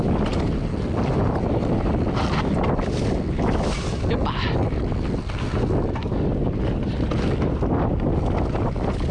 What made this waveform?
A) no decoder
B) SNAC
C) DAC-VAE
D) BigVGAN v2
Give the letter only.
A